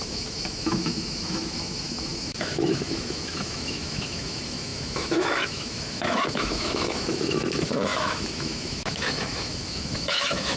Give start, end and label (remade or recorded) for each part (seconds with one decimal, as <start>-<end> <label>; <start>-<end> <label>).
0.0-10.6 remade